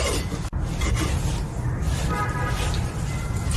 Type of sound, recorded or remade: recorded